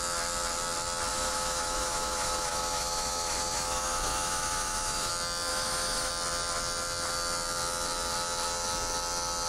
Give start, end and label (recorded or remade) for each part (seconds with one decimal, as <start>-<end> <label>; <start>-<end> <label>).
0.0-1.1 recorded; 1.1-5.1 remade; 5.1-5.5 recorded; 5.5-6.1 remade; 6.1-9.5 recorded